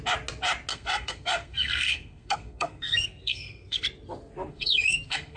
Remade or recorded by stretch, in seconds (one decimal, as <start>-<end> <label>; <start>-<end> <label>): 0.0-0.7 recorded; 0.7-3.8 remade; 3.8-4.5 recorded; 4.5-5.4 remade